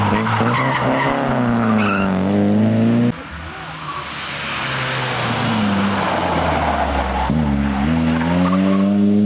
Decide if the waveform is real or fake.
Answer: real